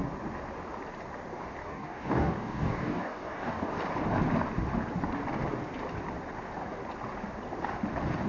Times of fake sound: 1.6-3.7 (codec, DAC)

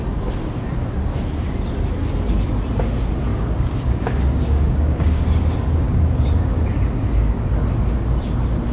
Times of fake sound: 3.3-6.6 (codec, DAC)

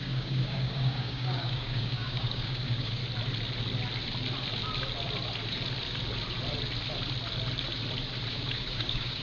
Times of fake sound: 0.0-3.0 (codec, DAC); 8.3-9.2

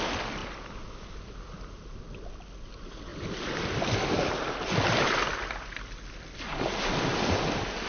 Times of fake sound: none

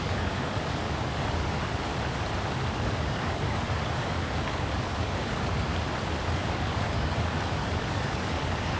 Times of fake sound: 0.0-1.9 (codec, DAC); 2.7-5.7; 6.3-8.8